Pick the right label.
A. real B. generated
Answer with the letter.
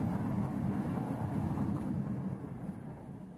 A